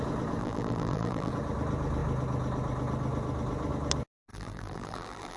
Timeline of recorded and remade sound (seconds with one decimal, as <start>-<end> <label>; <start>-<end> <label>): 0.0-0.4 recorded; 0.4-1.3 remade; 1.3-4.3 recorded; 4.3-5.4 remade